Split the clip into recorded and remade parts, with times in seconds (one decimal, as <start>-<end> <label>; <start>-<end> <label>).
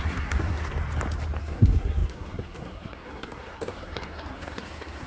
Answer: 0.0-0.7 remade; 0.7-1.4 recorded; 1.4-5.1 remade